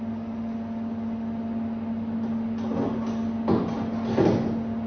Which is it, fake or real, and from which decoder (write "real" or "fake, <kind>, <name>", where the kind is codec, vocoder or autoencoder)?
real